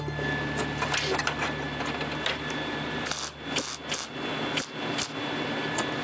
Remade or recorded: recorded